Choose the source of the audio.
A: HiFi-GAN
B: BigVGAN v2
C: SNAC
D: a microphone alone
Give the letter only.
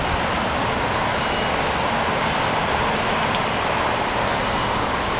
D